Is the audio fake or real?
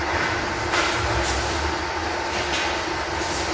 real